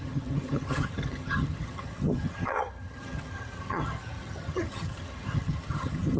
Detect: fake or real fake